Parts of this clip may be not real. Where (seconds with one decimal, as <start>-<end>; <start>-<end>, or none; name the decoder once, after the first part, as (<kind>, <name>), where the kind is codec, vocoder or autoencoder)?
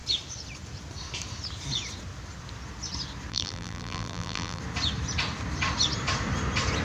3.3-4.6 (vocoder, BigVGAN v2)